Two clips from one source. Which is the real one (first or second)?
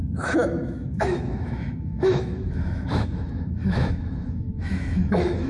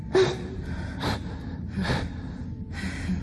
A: second